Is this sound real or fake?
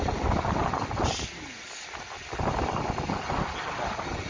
real